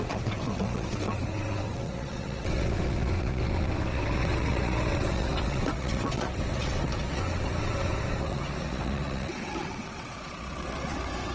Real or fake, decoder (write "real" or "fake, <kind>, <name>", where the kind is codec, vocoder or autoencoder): fake, vocoder, WaveNeXt